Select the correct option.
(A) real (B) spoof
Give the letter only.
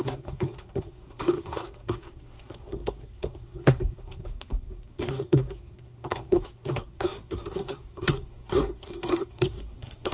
B